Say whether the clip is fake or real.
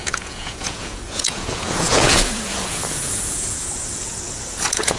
fake